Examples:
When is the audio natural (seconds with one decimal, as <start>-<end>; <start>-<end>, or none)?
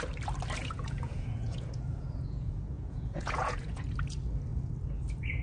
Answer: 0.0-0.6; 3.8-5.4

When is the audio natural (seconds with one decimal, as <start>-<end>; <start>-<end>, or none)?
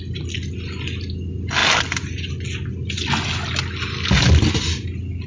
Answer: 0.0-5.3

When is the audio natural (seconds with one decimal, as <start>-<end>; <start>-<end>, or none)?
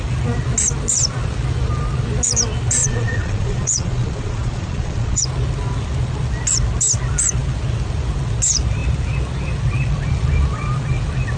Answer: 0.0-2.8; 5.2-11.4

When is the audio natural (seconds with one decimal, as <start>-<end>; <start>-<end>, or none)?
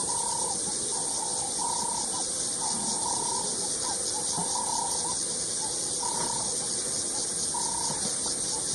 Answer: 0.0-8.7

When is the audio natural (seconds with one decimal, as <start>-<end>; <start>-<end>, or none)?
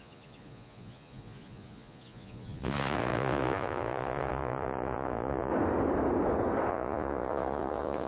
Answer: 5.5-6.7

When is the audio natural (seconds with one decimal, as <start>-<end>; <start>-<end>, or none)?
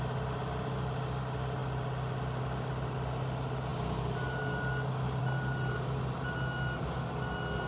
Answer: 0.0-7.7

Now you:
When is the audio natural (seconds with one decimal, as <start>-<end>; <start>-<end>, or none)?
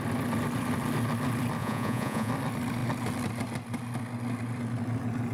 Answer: 0.0-1.6; 2.3-5.3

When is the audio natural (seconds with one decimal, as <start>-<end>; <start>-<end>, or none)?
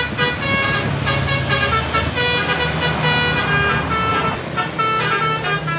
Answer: 0.0-5.8